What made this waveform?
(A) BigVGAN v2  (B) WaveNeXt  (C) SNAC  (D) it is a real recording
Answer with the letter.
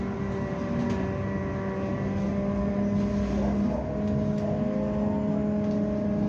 D